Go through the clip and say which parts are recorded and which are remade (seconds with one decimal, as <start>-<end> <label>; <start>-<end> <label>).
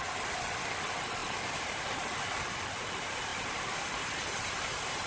0.0-1.2 recorded; 1.2-2.2 remade; 2.2-3.3 recorded; 3.3-5.1 remade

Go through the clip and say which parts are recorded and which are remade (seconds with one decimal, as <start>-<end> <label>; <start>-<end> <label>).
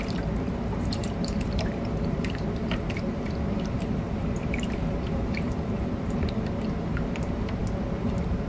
0.0-7.6 remade; 7.6-8.1 recorded; 8.1-8.5 remade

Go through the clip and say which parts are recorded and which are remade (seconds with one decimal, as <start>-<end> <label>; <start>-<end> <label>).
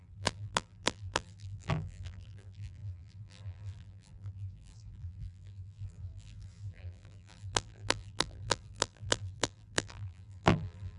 0.0-11.0 remade